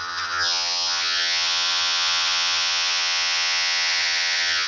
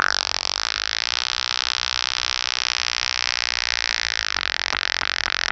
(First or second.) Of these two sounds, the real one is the second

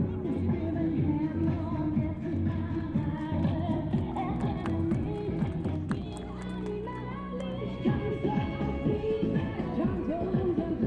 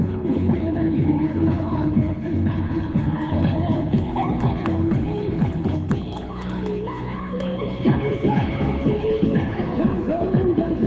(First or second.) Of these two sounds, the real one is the first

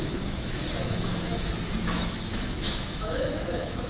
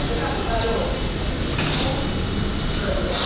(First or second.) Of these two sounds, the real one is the second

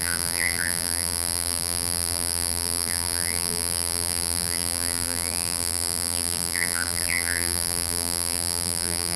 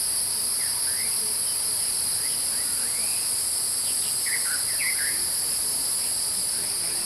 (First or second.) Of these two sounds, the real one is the second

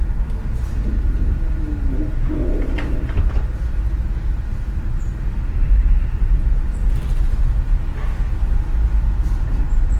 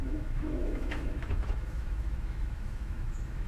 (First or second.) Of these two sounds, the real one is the first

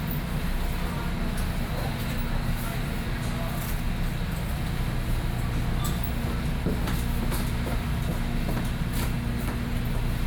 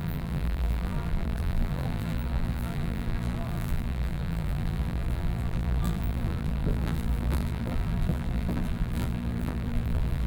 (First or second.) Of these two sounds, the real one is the first